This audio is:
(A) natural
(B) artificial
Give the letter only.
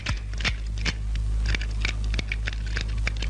A